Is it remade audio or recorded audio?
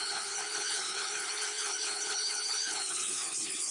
remade